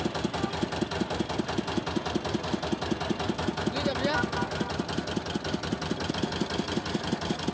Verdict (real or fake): real